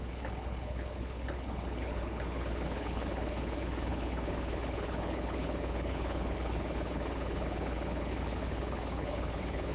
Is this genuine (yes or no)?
no